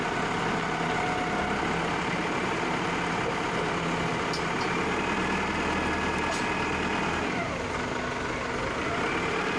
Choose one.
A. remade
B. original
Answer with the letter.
B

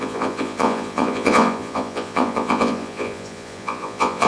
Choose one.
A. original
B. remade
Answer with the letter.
B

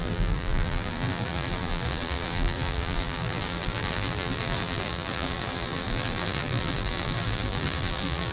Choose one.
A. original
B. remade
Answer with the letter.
B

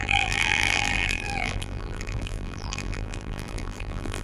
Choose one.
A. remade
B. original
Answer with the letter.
A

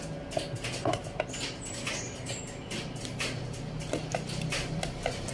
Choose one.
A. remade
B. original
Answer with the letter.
B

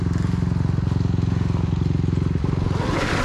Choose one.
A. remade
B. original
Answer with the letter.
B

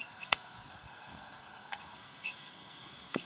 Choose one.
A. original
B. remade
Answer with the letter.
B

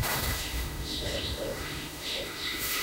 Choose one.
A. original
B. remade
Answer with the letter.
B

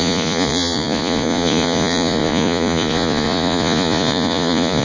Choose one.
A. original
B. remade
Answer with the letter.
B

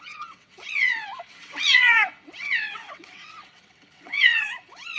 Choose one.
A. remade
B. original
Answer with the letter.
A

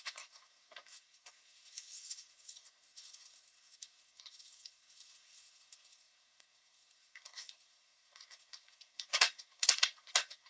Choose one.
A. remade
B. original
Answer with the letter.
A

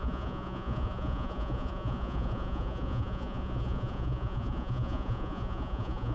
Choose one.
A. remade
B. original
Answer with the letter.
A